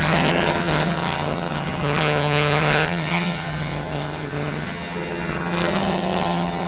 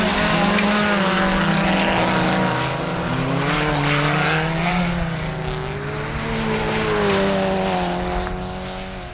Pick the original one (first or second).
second